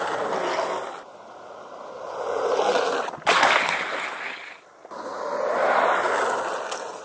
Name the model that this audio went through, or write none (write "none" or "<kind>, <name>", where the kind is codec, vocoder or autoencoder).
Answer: none